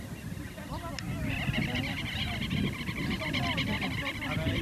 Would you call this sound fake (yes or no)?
no